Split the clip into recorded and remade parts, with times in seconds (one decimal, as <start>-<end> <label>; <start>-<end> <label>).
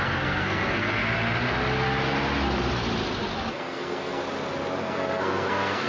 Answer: 0.0-1.0 remade; 1.0-3.5 recorded; 3.5-4.2 remade; 4.2-4.8 recorded; 4.8-5.9 remade